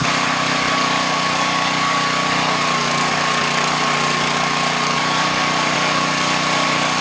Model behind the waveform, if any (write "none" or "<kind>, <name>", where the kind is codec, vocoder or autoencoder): codec, DAC